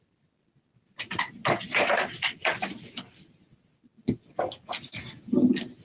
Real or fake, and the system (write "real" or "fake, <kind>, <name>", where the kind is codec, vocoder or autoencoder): real